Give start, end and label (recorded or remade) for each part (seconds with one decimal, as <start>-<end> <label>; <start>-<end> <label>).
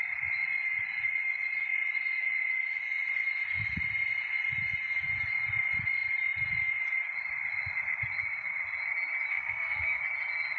0.0-9.3 recorded; 9.3-10.0 remade; 10.0-10.6 recorded